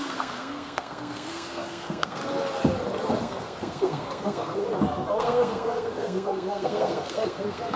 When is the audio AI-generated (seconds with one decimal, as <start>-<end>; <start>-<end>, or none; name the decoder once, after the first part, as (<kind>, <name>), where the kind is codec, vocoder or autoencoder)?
0.0-2.2 (codec, SNAC); 3.2-4.6; 5.1-7.8